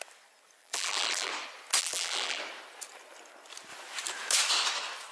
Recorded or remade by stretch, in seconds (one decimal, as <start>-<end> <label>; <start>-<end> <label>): 0.0-0.6 recorded; 0.6-1.3 remade; 1.3-1.8 recorded; 1.8-2.4 remade; 2.4-5.1 recorded